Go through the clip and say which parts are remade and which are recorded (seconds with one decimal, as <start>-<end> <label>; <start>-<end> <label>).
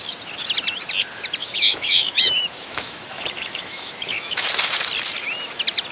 0.0-1.4 recorded; 1.4-4.5 remade; 4.5-5.9 recorded